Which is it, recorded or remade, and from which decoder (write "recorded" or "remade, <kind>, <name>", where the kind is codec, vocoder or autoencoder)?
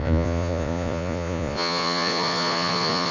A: remade, vocoder, Vocos